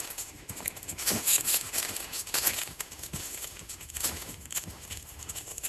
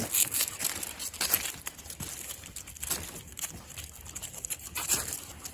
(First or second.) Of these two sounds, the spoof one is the first